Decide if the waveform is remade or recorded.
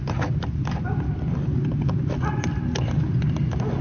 recorded